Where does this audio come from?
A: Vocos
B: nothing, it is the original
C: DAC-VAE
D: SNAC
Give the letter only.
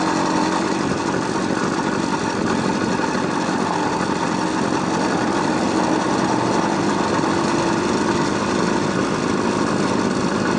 B